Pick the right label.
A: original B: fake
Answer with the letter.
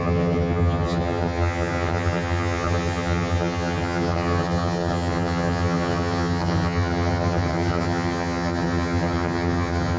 B